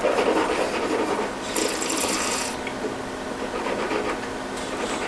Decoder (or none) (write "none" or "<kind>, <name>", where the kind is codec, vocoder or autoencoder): none